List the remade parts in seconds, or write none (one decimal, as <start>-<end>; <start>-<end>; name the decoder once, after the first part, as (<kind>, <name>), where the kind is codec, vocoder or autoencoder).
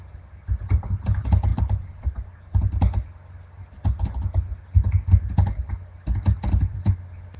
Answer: 1.5-2.8 (vocoder, BigVGAN v2)